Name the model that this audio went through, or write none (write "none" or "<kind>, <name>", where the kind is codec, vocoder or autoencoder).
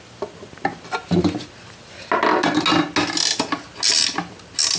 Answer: none